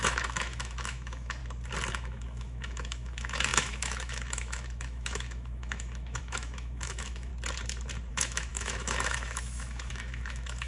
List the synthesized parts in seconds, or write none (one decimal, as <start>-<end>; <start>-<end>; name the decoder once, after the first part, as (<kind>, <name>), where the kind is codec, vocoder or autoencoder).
0.0-1.4 (autoencoder, DAC-VAE); 1.9-7.3; 8.1-10.7